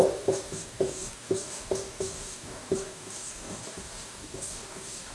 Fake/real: fake